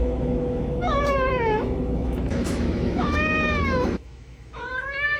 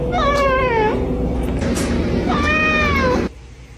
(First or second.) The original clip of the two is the second